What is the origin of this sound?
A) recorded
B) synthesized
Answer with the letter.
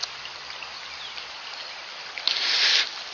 A